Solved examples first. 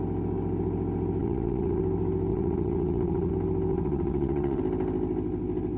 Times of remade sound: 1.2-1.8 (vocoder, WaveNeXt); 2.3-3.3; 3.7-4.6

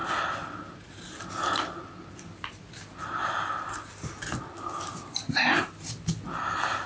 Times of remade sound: none

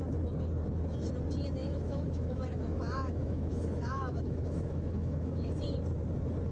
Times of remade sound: 1.6-5.5 (autoencoder, DAC-VAE)